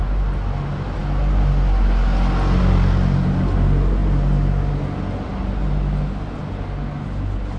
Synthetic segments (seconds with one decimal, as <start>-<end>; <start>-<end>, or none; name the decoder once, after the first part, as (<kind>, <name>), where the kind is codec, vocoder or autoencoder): none